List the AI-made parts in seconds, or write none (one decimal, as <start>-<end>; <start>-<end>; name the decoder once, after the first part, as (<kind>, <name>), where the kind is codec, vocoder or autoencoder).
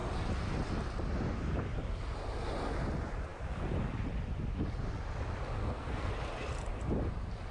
5.6-6.1 (codec, SNAC)